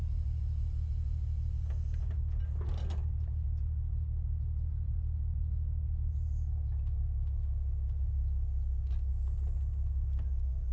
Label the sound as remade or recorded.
recorded